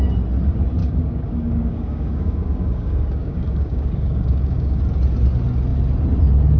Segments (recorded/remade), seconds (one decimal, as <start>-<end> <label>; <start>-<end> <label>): 0.0-0.8 recorded; 0.8-4.8 remade; 4.8-6.6 recorded